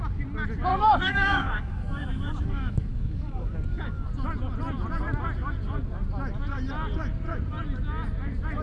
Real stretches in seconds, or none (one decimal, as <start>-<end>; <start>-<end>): 0.0-0.7; 4.1-8.6